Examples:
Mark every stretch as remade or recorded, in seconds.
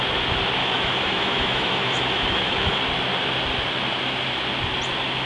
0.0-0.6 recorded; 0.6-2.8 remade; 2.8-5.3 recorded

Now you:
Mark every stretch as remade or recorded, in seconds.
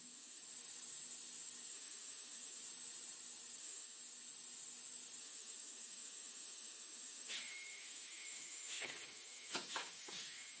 0.0-0.4 remade; 0.4-1.7 recorded; 1.7-2.6 remade; 2.6-3.6 recorded; 3.6-4.0 remade; 4.0-5.2 recorded; 5.2-10.6 remade